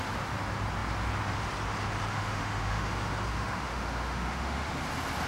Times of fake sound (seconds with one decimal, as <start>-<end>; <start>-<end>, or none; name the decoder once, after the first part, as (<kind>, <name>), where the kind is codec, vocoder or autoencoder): 2.1-2.9 (autoencoder, DAC-VAE); 3.3-4.7